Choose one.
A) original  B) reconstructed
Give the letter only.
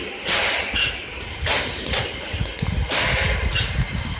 A